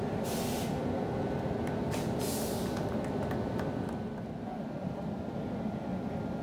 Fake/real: real